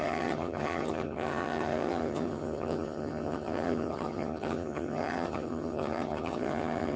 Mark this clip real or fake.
fake